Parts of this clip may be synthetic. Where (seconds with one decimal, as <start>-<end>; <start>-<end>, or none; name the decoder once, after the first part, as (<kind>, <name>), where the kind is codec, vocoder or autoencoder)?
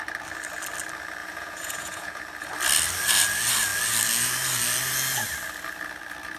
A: 1.2-2.2 (vocoder, Vocos)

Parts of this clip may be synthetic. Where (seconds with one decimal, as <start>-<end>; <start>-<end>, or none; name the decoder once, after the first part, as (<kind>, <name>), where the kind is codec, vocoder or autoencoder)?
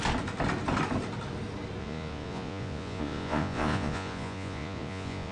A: 1.8-5.3 (vocoder, Vocos)